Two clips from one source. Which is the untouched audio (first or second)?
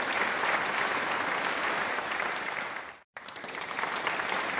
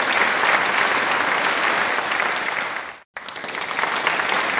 second